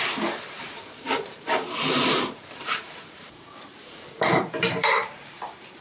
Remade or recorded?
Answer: remade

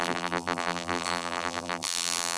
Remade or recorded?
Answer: remade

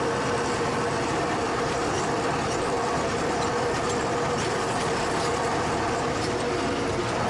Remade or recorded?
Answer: remade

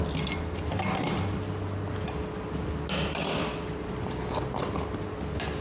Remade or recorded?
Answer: recorded